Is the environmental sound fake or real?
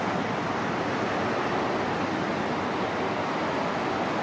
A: real